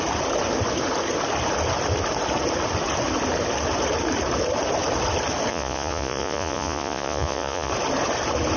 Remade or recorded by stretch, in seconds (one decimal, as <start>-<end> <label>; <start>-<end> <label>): 0.0-5.5 recorded; 5.5-7.7 remade; 7.7-8.6 recorded